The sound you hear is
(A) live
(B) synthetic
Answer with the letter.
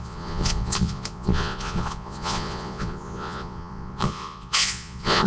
B